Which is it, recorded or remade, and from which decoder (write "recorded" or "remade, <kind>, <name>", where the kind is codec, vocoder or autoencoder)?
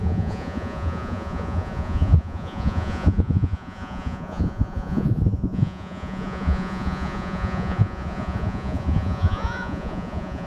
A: remade, vocoder, Vocos